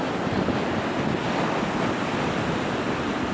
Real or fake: real